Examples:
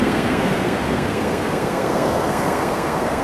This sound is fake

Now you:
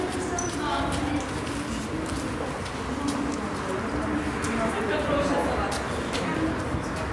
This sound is real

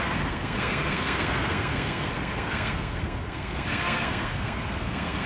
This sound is fake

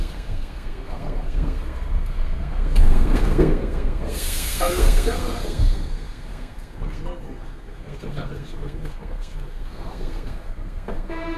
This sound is fake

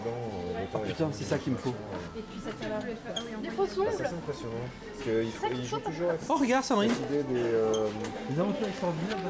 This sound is real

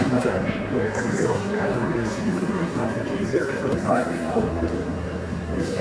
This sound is fake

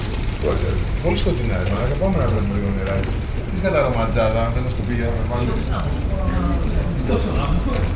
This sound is real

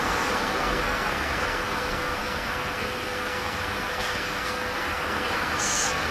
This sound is fake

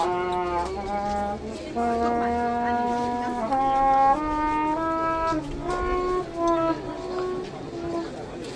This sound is real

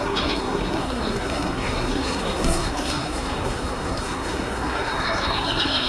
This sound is fake